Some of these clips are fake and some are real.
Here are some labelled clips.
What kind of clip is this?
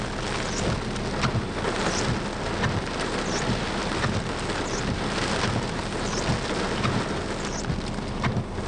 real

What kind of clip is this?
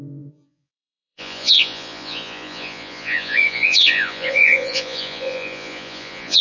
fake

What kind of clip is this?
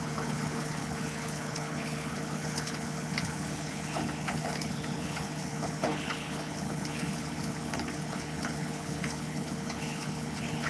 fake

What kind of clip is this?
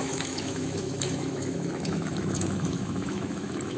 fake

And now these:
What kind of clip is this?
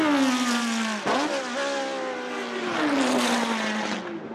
real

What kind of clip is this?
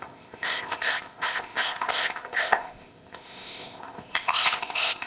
fake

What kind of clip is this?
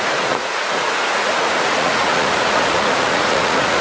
fake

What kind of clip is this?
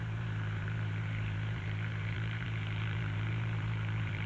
fake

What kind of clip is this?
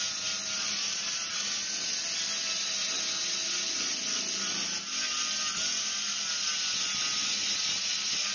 real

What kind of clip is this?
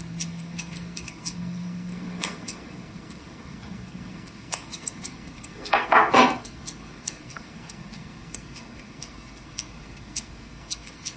fake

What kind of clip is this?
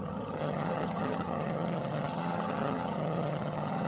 fake